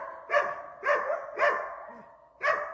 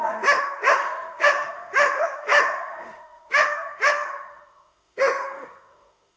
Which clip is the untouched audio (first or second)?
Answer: first